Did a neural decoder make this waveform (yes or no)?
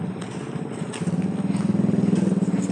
no